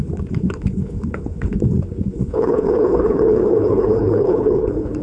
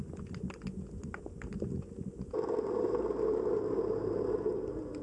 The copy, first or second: first